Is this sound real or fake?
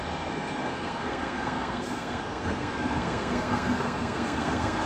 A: fake